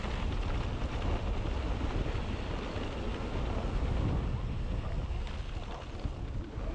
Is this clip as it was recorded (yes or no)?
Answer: yes